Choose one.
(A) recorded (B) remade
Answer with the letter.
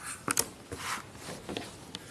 A